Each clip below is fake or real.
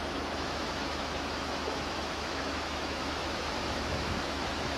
fake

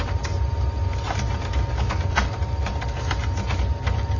real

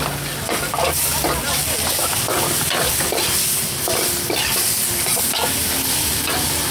real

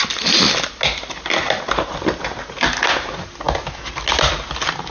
real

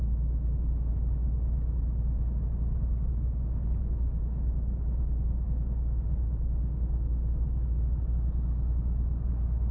real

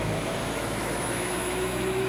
fake